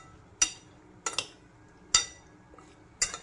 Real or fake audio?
real